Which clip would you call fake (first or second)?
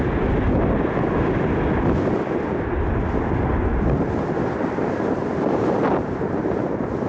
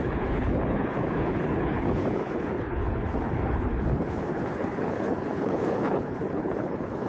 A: second